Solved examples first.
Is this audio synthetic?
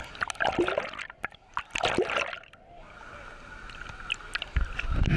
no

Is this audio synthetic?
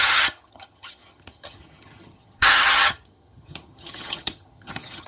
yes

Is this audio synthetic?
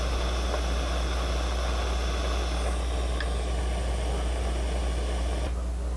no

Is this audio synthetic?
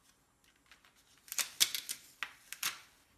no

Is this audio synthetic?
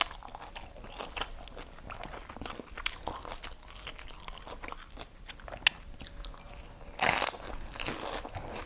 no